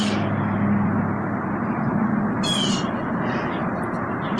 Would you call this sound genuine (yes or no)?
yes